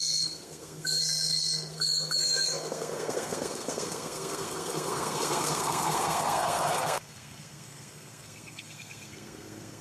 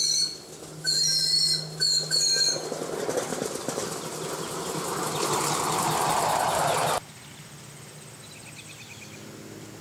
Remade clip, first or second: first